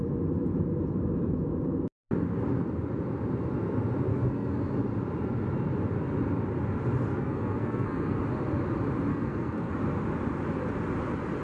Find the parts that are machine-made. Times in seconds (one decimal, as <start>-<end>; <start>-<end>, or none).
4.1-4.6; 7.1-8.2; 9.1-9.7